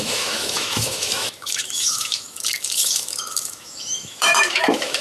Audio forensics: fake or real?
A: fake